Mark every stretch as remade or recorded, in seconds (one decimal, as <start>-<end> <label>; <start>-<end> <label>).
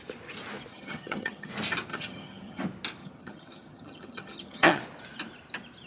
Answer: 0.0-0.7 recorded; 0.7-1.5 remade; 1.5-1.9 recorded; 1.9-2.6 remade; 2.6-3.0 recorded; 3.0-4.8 remade; 4.8-5.9 recorded